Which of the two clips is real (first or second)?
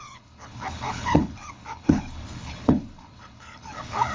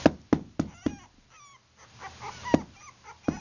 second